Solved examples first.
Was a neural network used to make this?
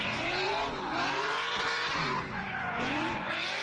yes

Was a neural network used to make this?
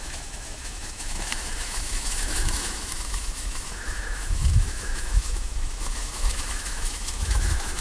yes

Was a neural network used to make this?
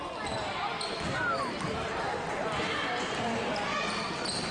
no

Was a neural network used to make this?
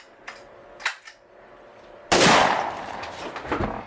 no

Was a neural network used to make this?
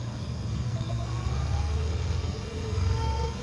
yes